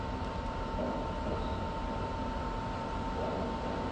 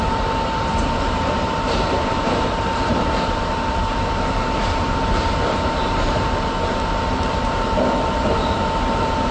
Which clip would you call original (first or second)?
first